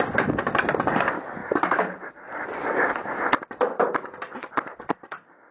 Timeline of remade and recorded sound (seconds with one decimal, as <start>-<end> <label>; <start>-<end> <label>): 0.0-5.5 recorded